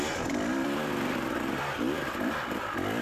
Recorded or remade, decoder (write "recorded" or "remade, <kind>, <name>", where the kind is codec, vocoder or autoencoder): remade, vocoder, BigVGAN v2